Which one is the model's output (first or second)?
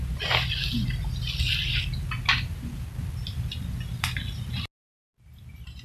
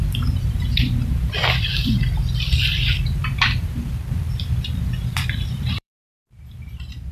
second